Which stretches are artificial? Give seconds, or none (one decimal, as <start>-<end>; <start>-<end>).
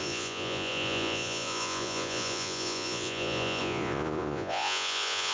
0.0-5.3